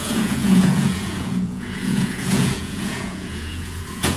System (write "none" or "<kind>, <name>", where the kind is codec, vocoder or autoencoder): vocoder, Vocos